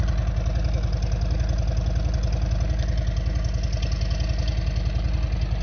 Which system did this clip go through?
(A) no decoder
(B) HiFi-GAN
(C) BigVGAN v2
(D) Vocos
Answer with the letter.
A